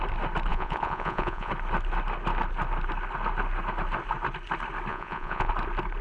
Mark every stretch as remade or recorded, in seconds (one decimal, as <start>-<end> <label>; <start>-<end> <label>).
0.0-0.5 recorded; 0.5-1.5 remade; 1.5-4.9 recorded; 4.9-5.5 remade; 5.5-6.0 recorded